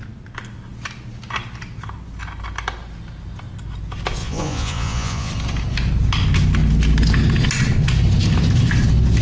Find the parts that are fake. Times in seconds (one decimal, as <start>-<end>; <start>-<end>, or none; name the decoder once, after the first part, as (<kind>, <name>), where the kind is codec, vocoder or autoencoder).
4.2-5.3 (vocoder, Vocos)